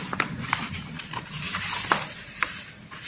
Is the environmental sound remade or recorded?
recorded